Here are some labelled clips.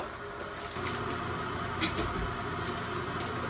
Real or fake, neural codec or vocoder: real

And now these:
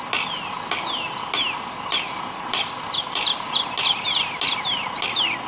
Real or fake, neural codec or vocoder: real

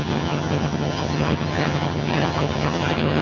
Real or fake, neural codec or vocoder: fake, vocoder, HiFi-GAN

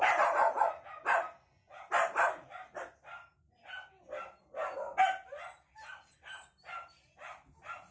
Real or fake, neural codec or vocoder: real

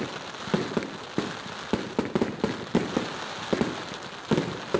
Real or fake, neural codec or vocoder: real